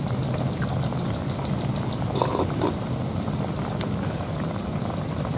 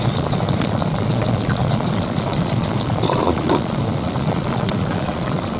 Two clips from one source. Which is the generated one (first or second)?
second